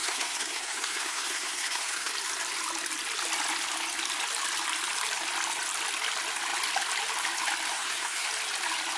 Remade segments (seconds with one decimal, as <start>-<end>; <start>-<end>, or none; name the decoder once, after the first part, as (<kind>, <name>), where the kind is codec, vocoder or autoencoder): 0.0-2.1 (codec, SNAC); 7.7-8.3